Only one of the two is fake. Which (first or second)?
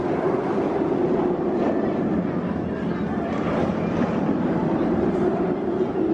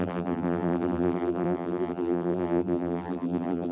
second